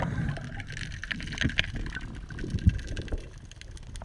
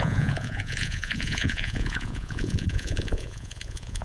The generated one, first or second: second